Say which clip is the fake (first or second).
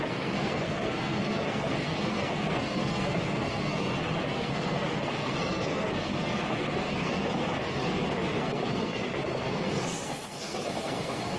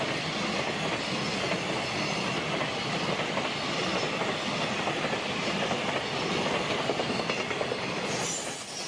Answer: first